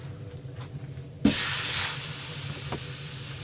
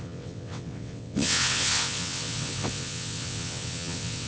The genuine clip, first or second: first